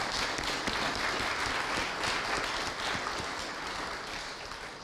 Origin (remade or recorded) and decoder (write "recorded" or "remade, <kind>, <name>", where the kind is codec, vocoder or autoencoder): recorded